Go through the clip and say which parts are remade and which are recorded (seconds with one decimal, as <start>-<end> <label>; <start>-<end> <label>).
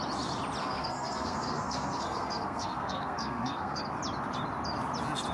0.0-0.6 recorded; 0.6-3.8 remade; 3.8-5.3 recorded